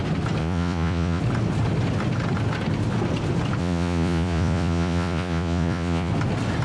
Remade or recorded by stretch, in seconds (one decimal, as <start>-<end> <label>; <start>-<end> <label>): 0.0-0.4 recorded; 0.4-1.2 remade; 1.2-3.6 recorded; 3.6-6.1 remade; 6.1-6.6 recorded